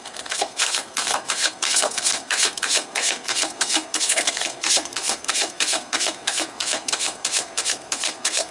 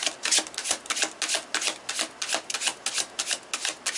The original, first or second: second